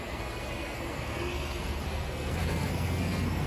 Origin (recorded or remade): remade